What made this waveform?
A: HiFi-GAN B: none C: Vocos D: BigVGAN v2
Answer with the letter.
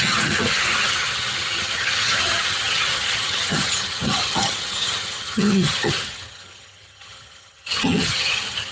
A